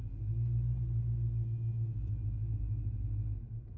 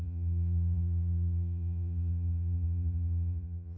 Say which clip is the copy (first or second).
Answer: second